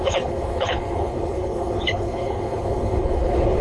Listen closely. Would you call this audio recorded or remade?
remade